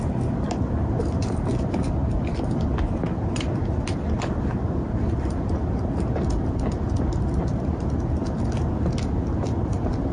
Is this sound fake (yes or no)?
no